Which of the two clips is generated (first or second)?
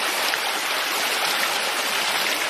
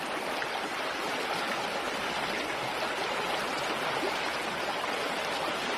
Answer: first